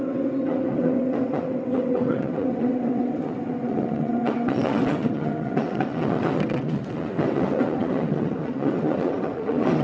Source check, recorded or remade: remade